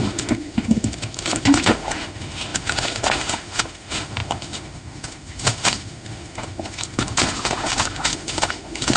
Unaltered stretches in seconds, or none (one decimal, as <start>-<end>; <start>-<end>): none